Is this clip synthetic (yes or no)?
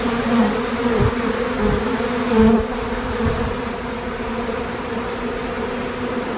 yes